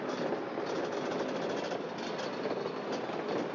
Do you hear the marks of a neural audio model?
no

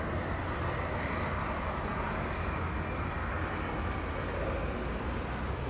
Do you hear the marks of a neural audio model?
no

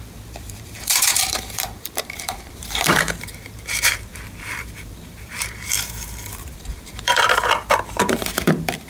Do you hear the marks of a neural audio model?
yes